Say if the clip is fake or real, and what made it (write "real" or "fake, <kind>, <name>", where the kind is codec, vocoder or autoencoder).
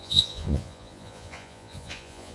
fake, vocoder, Vocos